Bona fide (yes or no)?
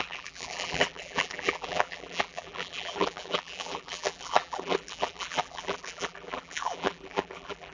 no